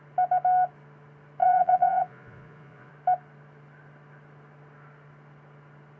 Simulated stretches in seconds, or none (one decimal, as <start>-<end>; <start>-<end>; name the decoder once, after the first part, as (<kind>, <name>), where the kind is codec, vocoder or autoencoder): 1.4-2.9 (vocoder, Vocos)